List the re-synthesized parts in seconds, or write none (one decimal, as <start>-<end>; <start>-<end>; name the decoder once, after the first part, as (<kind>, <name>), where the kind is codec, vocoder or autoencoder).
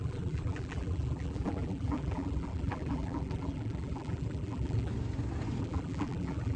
0.0-4.9 (vocoder, BigVGAN v2); 5.6-6.6